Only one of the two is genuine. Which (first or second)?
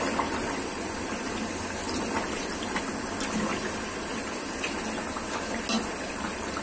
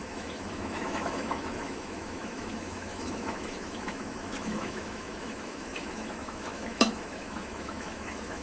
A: first